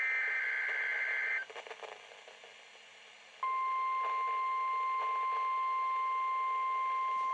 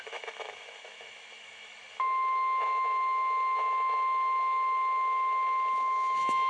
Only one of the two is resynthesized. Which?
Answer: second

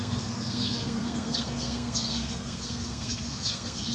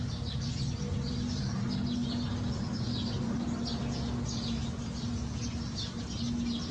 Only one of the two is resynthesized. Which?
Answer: first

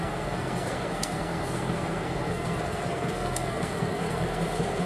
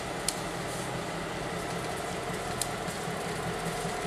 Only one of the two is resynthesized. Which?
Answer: first